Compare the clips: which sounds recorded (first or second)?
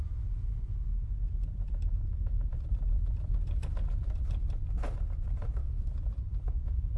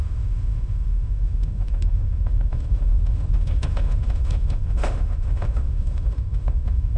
first